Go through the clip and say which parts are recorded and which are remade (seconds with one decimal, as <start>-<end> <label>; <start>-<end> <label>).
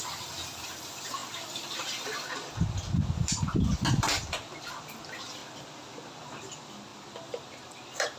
0.0-8.2 recorded